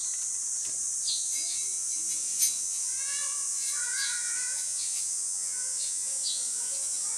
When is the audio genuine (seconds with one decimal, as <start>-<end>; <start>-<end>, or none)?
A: 0.0-1.1